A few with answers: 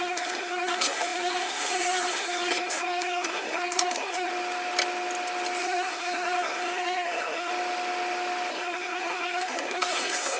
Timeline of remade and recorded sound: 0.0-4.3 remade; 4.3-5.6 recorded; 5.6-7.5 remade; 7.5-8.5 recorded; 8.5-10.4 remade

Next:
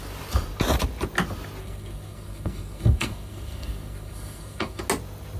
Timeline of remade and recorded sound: 0.0-1.6 recorded; 1.6-4.8 remade; 4.8-5.4 recorded